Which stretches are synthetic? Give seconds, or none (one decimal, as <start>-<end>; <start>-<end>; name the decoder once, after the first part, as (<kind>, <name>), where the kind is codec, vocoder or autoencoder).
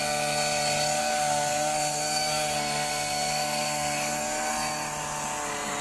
1.0-4.5 (codec, SNAC)